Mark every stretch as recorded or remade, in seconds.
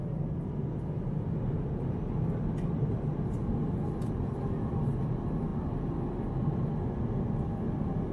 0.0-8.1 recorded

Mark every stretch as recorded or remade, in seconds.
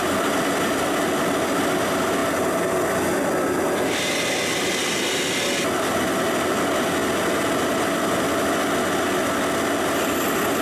0.0-10.6 recorded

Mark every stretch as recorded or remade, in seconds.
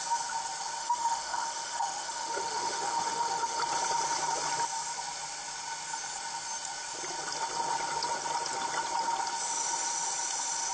0.0-0.8 recorded; 0.8-3.6 remade; 3.6-10.7 recorded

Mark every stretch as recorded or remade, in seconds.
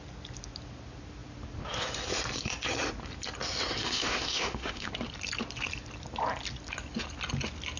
0.0-3.8 recorded; 3.8-4.9 remade; 4.9-7.8 recorded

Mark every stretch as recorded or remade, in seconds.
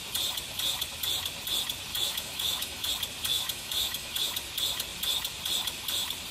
0.0-1.9 recorded; 1.9-2.9 remade; 2.9-3.3 recorded; 3.3-4.3 remade; 4.3-6.3 recorded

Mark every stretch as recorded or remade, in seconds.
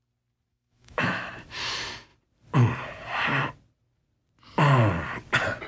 0.0-0.5 recorded; 0.5-1.3 remade; 1.3-5.7 recorded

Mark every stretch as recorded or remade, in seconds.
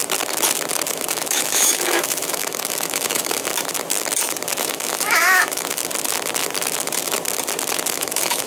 0.0-0.9 recorded; 0.9-3.5 remade; 3.5-4.6 recorded; 4.6-5.8 remade; 5.8-7.9 recorded; 7.9-8.5 remade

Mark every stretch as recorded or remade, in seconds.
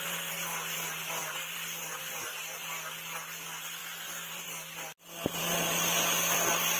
0.0-6.8 recorded